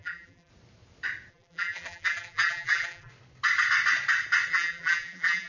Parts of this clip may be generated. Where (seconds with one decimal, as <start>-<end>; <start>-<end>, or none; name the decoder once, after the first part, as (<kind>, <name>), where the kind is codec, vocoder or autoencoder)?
0.0-0.5 (vocoder, BigVGAN v2); 1.3-3.1; 4.5-5.5